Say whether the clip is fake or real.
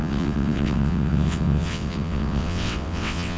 fake